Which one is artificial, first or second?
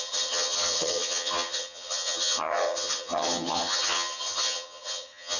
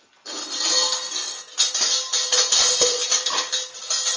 first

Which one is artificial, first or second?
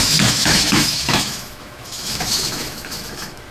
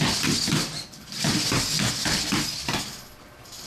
first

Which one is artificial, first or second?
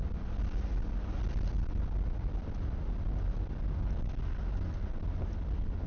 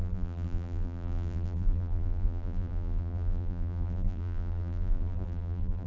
second